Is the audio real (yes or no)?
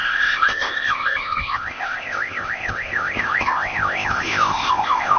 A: no